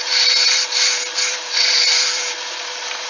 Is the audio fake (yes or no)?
yes